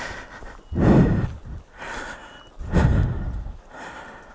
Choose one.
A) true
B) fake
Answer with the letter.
A